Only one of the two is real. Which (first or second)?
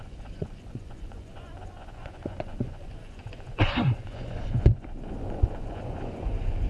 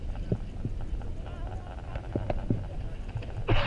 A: second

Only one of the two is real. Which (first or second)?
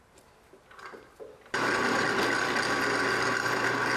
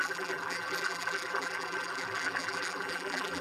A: first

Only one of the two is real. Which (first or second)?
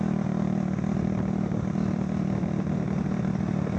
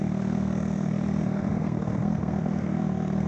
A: first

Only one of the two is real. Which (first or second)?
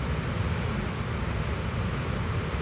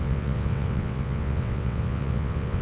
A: first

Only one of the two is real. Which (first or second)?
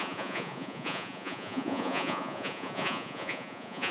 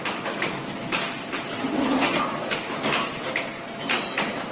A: second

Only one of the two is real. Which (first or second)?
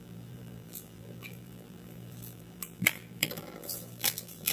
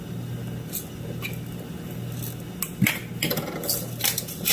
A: second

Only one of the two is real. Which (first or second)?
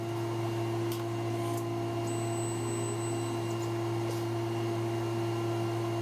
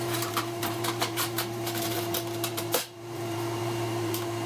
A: first